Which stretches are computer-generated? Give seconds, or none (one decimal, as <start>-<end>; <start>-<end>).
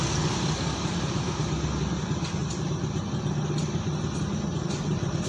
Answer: none